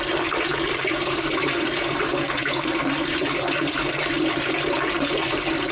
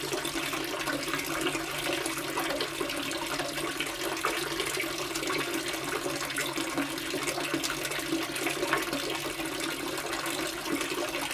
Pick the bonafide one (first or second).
second